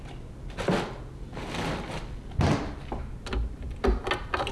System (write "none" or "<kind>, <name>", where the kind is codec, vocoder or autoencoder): none